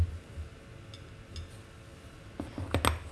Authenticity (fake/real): real